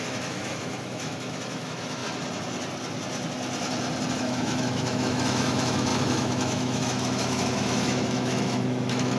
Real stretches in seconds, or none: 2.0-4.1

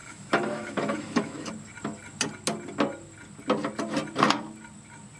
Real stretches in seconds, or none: 1.5-5.2

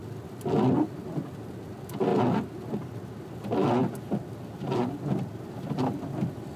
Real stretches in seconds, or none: 0.0-6.6